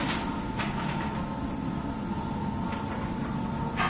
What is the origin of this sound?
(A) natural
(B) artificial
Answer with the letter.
A